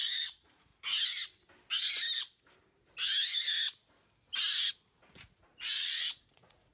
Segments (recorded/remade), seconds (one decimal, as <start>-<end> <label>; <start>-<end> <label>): 0.0-0.7 remade; 0.7-4.7 recorded; 4.7-6.7 remade